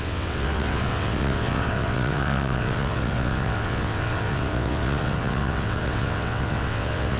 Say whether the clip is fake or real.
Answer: fake